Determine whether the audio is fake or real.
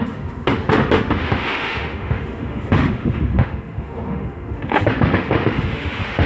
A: fake